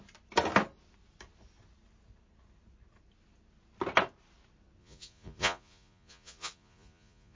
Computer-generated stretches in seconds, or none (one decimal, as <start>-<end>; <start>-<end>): 4.8-7.4